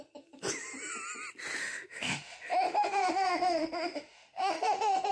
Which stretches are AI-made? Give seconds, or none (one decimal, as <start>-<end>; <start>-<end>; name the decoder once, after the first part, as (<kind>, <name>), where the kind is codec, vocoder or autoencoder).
1.6-5.1 (autoencoder, DAC-VAE)